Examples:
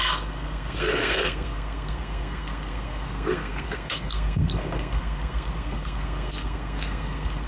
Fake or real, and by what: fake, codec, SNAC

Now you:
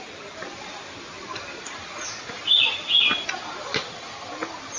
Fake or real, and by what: real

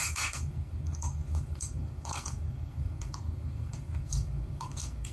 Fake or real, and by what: fake, codec, SNAC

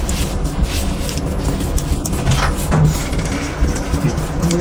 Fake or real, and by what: real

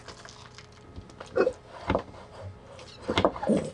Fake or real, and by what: real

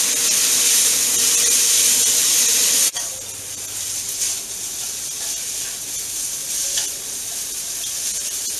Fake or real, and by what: real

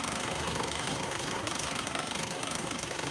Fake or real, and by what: fake, codec, SNAC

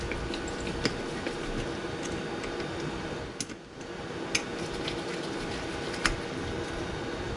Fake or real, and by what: real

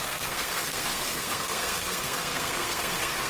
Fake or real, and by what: fake, codec, SNAC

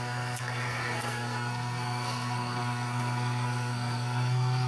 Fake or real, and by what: fake, codec, SNAC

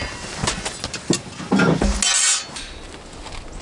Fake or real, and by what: real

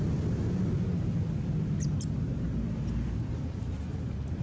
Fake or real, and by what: real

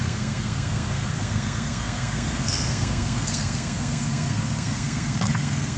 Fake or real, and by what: fake, codec, SNAC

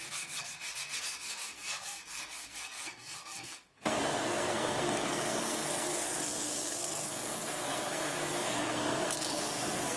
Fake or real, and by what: fake, codec, SNAC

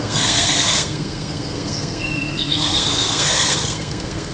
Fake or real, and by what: fake, codec, SNAC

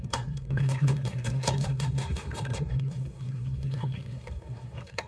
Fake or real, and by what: fake, codec, SNAC